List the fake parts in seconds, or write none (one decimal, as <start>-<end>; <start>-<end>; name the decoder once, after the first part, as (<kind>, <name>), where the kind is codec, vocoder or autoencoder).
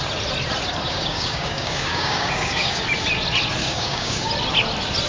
0.9-2.8 (codec, DAC); 3.6-4.3